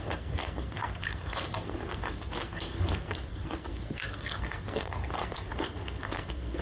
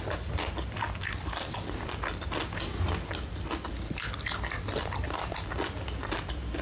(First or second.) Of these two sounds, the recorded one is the second